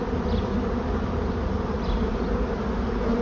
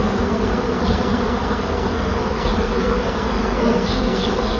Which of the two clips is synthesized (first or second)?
second